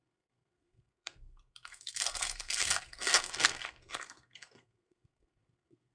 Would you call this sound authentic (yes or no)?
no